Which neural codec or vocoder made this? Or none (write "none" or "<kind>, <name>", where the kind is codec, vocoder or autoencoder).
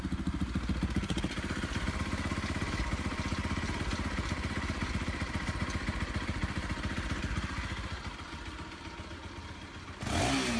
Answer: none